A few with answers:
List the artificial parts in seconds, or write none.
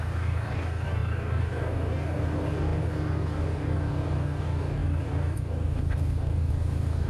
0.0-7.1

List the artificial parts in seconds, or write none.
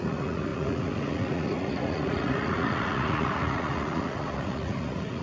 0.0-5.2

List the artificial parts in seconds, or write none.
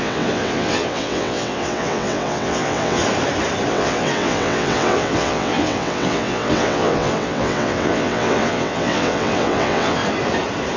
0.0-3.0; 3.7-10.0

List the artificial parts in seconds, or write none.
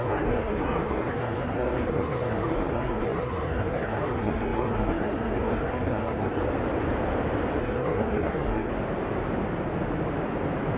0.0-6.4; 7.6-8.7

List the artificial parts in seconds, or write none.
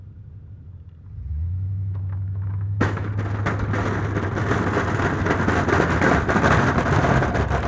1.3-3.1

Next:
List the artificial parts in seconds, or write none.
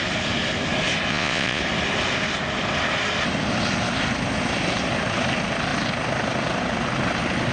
1.1-1.6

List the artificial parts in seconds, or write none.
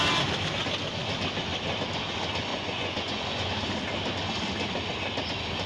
2.5-3.5